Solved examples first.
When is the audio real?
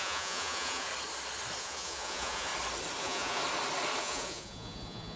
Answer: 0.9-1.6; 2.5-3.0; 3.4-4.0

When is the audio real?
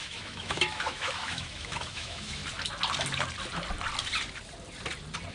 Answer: 2.4-5.3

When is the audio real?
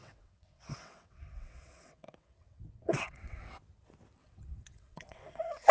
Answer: 3.4-4.2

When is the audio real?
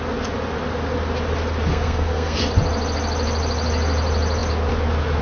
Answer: 0.0-1.7; 2.4-5.2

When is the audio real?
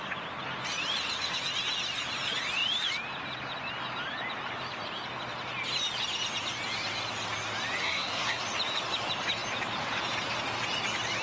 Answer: 0.0-7.8; 8.4-11.2